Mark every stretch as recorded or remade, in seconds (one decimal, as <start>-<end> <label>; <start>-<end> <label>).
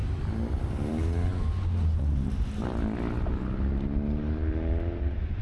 0.0-5.4 recorded